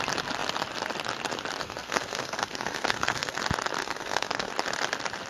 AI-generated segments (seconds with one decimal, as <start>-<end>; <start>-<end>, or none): 1.6-3.4; 3.8-4.5